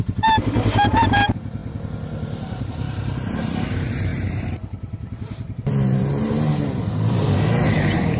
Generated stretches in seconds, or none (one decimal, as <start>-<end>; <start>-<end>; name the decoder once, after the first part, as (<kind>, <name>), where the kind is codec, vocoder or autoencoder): 0.0-8.2 (vocoder, BigVGAN v2)

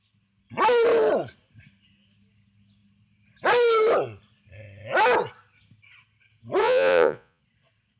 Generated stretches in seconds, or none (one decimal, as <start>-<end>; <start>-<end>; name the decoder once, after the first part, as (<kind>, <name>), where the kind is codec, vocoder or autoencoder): 6.6-7.4 (vocoder, Vocos)

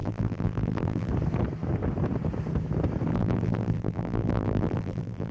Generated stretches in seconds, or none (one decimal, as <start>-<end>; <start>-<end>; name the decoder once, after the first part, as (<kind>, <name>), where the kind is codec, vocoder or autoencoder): 0.0-1.1 (vocoder, BigVGAN v2); 3.1-5.3

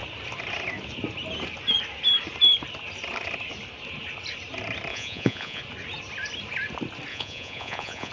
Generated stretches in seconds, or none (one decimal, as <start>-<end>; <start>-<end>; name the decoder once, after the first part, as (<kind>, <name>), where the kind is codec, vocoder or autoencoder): 4.9-5.6 (vocoder, Vocos); 7.1-8.1

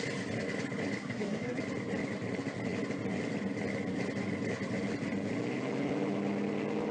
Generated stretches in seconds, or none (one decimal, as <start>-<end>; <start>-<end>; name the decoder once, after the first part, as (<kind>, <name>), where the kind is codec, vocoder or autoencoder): 1.0-1.6 (codec, SNAC)